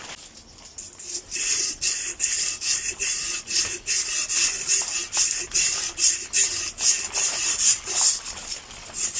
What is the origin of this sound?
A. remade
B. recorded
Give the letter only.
B